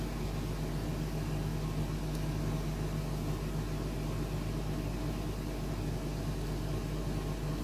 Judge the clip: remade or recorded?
recorded